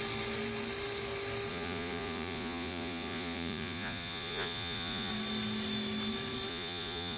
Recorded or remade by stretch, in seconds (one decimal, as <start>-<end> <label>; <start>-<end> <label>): 0.0-1.5 recorded; 1.5-5.1 remade; 5.1-6.5 recorded; 6.5-7.2 remade